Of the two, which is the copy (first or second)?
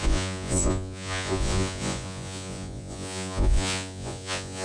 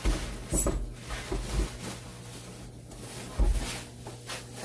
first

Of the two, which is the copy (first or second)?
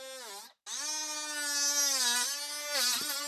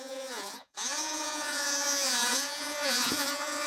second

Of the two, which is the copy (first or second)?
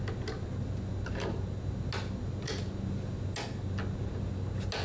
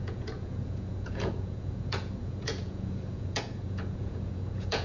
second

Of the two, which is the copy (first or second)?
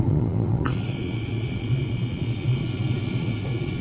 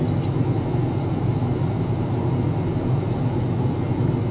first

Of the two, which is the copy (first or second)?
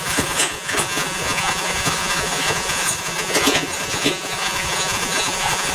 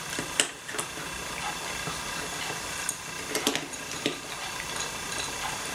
first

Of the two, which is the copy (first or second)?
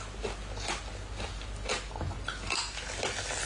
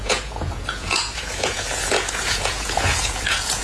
second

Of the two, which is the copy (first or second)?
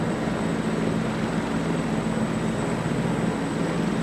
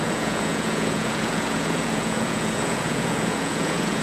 second